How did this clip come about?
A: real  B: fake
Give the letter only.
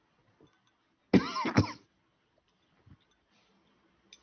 A